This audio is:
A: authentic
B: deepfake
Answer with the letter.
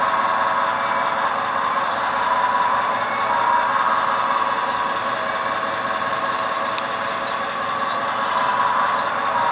A